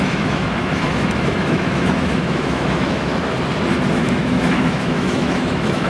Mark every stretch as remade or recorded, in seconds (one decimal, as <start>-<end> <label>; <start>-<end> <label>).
0.0-3.1 remade; 3.1-3.9 recorded; 3.9-5.9 remade